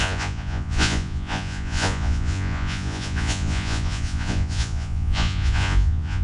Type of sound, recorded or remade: remade